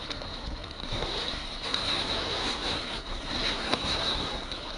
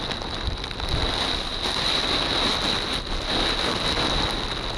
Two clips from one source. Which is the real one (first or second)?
second